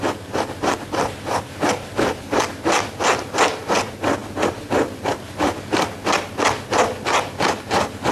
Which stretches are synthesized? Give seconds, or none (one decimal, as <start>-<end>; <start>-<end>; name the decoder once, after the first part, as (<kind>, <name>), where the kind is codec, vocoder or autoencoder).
none